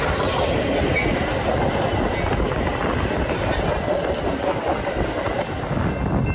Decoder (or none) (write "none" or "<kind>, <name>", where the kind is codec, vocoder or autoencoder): none